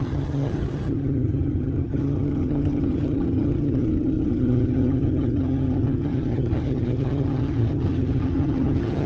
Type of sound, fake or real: fake